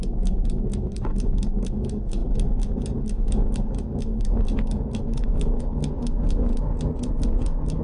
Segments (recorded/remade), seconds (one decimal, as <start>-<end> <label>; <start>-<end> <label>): 0.0-6.5 remade; 6.5-7.2 recorded; 7.2-7.8 remade